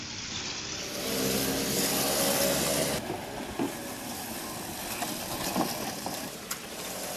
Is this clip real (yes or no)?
no